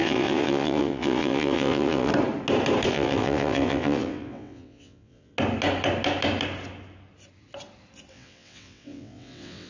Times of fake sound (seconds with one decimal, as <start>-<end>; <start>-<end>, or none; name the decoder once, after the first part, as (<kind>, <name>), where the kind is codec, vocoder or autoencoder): 0.0-2.1 (vocoder, WaveNeXt); 2.9-5.3; 8.1-9.7